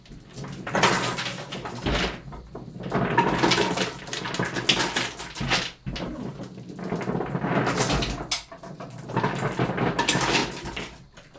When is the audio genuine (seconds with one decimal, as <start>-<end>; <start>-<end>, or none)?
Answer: 0.0-10.4